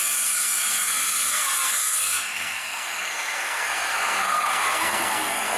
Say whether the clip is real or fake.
fake